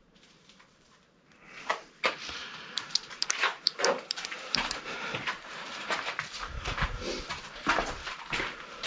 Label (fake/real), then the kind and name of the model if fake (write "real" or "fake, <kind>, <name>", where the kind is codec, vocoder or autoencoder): fake, vocoder, BigVGAN v2